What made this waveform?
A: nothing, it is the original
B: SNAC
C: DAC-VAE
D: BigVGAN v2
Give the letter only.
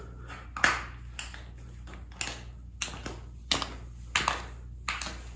A